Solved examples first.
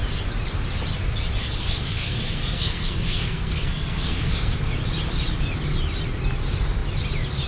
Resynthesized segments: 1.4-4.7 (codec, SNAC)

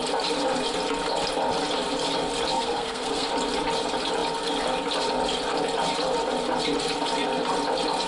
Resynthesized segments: 2.5-3.3 (codec, SNAC)

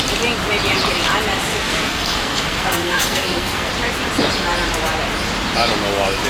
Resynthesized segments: 1.5-3.7 (codec, SNAC)

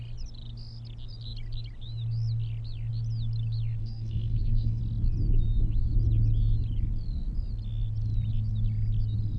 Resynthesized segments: 3.8-4.8 (codec, SNAC)

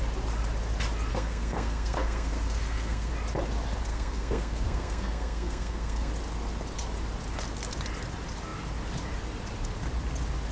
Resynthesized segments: 1.1-3.1 (codec, SNAC); 3.9-6.1

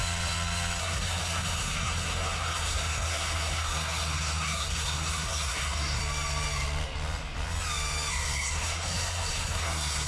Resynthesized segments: 0.8-6.0 (codec, SNAC); 8.1-10.1